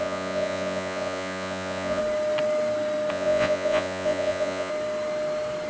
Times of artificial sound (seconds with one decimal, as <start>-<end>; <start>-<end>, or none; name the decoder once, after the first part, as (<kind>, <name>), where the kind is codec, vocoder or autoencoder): 0.0-2.0 (vocoder, Vocos); 3.1-4.7